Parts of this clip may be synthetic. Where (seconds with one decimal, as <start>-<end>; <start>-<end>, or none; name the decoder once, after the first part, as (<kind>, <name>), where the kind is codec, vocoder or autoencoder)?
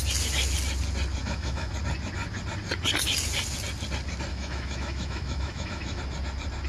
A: 1.2-1.7 (autoencoder, DAC-VAE); 4.3-6.0